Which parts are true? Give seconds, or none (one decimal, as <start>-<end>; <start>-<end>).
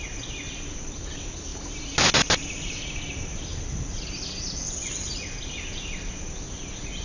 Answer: 0.0-7.0